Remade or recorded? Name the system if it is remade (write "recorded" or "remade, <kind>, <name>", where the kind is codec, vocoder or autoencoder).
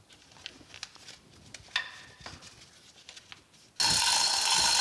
recorded